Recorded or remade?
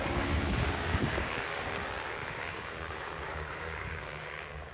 remade